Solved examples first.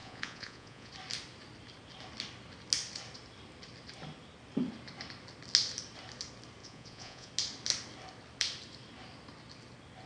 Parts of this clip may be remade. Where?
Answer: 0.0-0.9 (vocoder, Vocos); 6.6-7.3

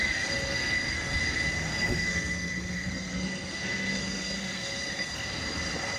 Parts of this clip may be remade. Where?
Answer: 0.0-1.2 (codec, SNAC); 1.7-5.3

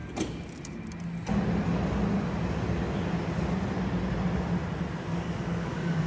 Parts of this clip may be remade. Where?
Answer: 5.1-6.1 (codec, DAC)

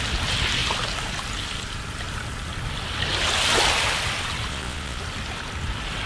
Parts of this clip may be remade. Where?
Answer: 4.5-5.0 (vocoder, Vocos)

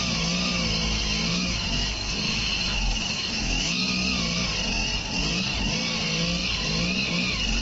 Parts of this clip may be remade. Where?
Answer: 1.3-3.8 (autoencoder, DAC-VAE)

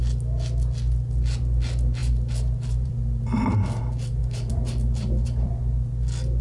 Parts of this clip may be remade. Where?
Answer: 2.0-3.8 (vocoder, BigVGAN v2); 4.2-5.5

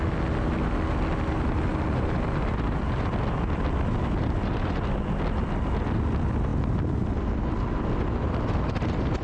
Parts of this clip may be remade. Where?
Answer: none

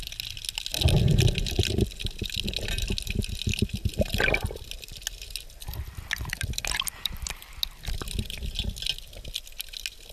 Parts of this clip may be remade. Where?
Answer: 3.5-4.7 (vocoder, BigVGAN v2); 5.6-7.5